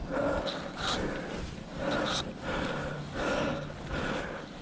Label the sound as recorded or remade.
recorded